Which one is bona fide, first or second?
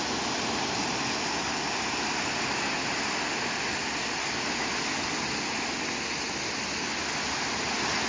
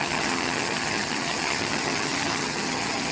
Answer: first